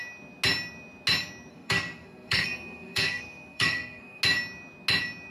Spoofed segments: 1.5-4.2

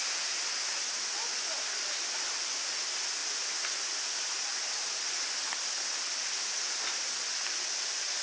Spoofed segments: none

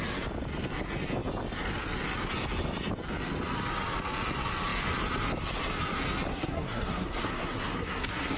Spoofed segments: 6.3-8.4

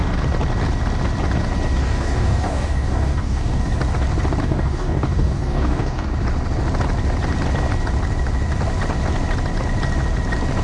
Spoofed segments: 1.8-3.6; 4.4-6.1

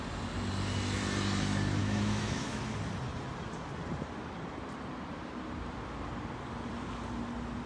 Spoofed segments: 1.8-2.6

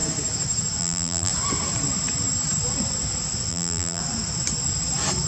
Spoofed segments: 0.8-1.3; 3.5-4.0